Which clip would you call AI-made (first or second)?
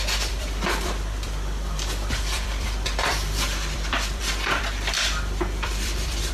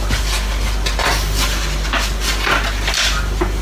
first